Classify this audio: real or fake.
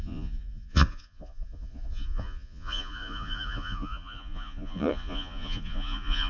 fake